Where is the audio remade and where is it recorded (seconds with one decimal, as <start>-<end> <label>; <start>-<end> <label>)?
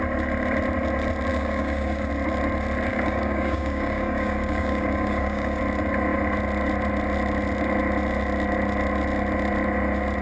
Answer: 0.0-1.3 recorded; 1.3-2.1 remade; 2.1-2.9 recorded; 2.9-5.6 remade; 5.6-10.2 recorded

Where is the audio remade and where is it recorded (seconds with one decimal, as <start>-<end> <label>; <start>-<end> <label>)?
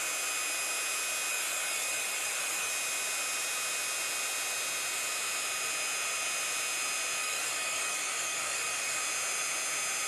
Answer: 0.0-1.3 recorded; 1.3-2.7 remade; 2.7-7.2 recorded; 7.2-9.0 remade; 9.0-10.1 recorded